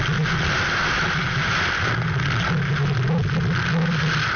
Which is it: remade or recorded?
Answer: recorded